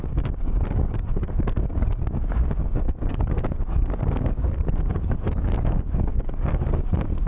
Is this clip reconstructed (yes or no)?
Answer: yes